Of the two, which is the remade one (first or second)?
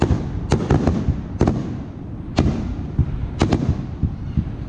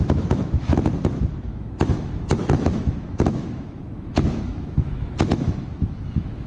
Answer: second